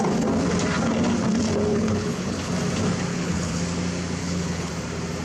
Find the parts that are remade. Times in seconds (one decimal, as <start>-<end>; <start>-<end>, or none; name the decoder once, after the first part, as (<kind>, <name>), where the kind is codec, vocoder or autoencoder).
1.7-2.5 (codec, HILCodec); 3.1-3.6; 4.2-4.7